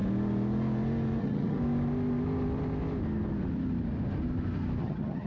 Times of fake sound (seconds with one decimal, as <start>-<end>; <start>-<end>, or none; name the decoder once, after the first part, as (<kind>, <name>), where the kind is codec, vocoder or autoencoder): 1.2-1.6 (vocoder, HiFi-GAN); 4.8-5.3